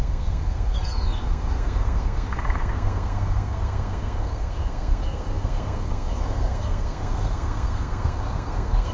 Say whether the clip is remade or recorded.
remade